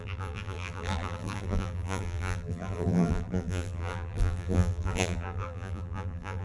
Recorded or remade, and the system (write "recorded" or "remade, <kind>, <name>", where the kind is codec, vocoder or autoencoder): remade, vocoder, BigVGAN v2